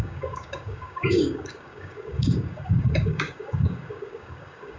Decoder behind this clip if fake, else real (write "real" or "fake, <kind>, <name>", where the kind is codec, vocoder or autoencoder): fake, codec, DAC